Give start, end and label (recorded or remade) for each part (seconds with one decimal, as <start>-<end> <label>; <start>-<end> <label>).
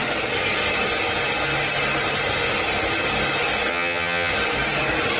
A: 0.0-3.7 recorded; 3.7-4.3 remade; 4.3-5.2 recorded